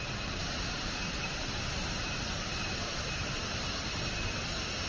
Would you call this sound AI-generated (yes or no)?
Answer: yes